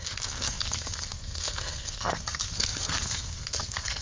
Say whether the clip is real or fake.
fake